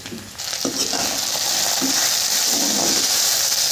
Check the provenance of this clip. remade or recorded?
recorded